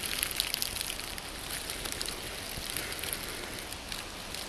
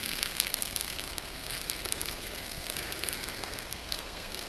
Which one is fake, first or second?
second